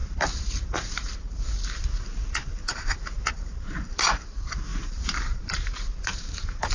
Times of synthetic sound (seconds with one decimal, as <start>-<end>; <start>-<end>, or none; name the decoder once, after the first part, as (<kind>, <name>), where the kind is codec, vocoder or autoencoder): 0.0-4.0 (vocoder, BigVGAN v2); 4.7-6.7